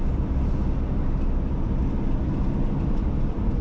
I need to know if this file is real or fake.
real